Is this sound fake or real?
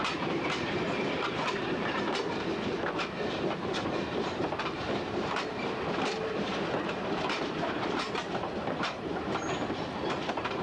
fake